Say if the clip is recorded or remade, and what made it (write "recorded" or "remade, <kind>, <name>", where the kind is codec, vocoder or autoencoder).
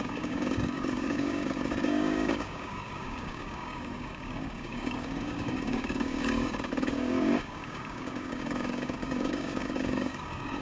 remade, codec, DAC